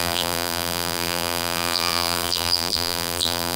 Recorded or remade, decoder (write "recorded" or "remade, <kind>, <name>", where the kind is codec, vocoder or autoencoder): remade, vocoder, BigVGAN v2